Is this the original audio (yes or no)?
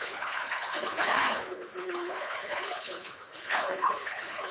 no